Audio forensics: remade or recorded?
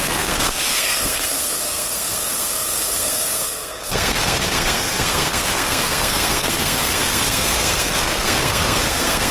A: remade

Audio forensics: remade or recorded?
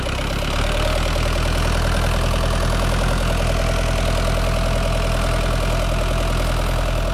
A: recorded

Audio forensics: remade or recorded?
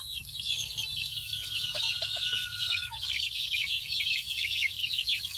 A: remade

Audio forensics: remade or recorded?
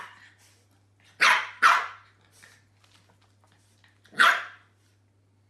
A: recorded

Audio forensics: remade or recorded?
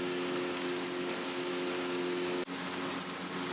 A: recorded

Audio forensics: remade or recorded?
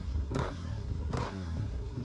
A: remade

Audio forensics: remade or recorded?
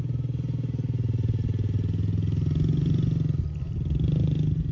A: recorded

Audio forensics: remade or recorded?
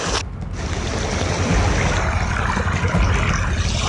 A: recorded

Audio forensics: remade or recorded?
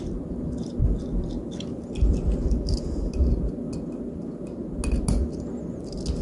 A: recorded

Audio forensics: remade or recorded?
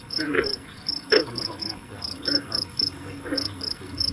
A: remade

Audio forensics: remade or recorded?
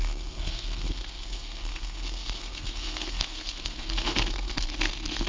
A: remade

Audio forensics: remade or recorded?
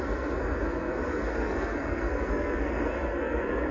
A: remade